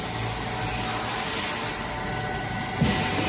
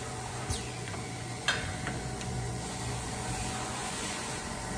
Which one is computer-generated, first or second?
second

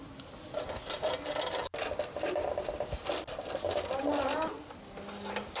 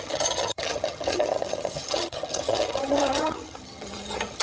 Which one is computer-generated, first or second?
second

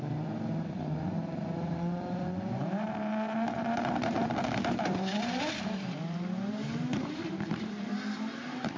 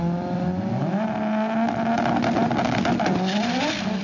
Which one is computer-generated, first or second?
first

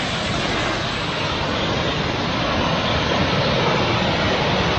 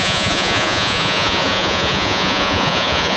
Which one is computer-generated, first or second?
second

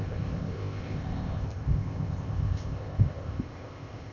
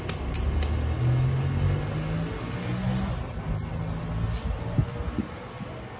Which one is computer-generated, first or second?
first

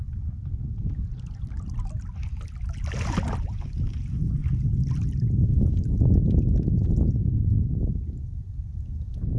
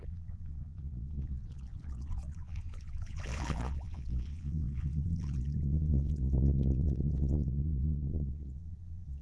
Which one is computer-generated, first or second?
second